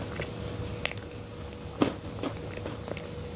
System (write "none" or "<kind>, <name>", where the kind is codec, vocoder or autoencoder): none